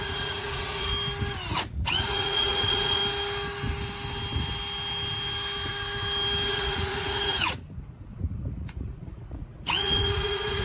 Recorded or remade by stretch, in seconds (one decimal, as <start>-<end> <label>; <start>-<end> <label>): 0.0-0.9 remade; 0.9-1.5 recorded; 1.5-3.0 remade; 3.0-6.5 recorded; 6.5-10.6 remade